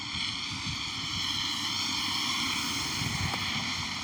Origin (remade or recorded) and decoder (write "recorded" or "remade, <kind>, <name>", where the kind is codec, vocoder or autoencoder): recorded